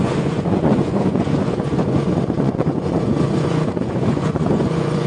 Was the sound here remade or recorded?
remade